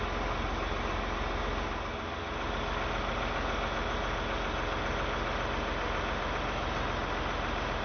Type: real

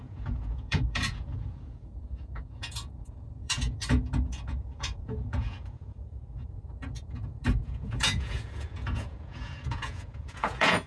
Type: fake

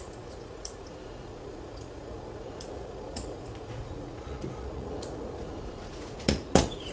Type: fake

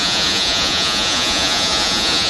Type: fake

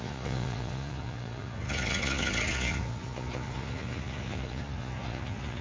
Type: fake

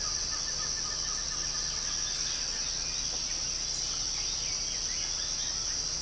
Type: real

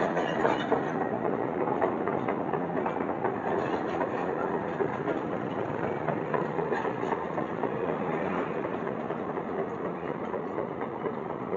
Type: fake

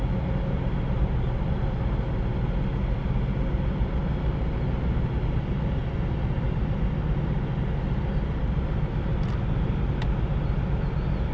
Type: real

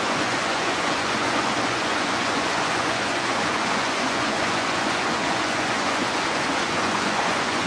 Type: fake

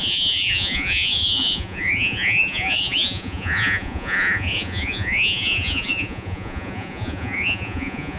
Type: fake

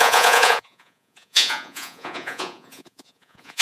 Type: fake